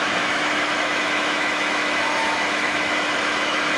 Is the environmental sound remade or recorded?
remade